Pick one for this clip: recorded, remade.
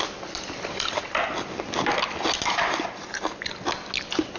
recorded